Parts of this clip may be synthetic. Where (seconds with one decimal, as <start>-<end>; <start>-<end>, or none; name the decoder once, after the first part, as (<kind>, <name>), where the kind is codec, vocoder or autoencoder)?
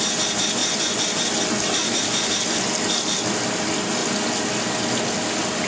0.6-1.2 (vocoder, Vocos); 1.8-2.3